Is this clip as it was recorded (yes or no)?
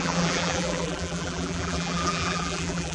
no